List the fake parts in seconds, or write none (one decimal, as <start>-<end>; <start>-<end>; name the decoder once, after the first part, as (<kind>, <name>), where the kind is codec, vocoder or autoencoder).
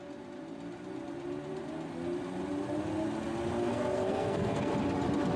3.6-4.7 (codec, SNAC)